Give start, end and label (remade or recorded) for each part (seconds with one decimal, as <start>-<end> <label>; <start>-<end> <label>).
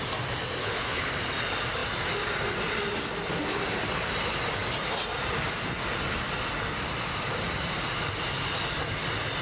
0.0-0.6 recorded; 0.6-1.1 remade; 1.1-9.4 recorded